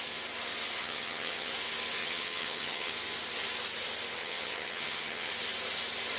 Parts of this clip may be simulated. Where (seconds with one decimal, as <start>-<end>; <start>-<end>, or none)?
0.8-1.5; 2.0-2.9; 4.2-5.3